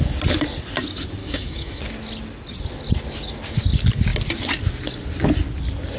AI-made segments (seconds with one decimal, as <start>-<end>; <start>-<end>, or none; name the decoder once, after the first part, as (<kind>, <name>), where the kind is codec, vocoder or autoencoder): 1.2-1.8 (autoencoder, DAC-VAE)